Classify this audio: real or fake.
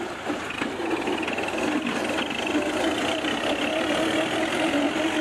real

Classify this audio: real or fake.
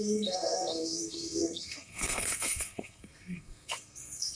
fake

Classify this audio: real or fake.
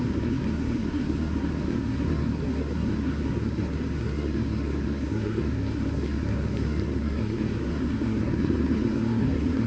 fake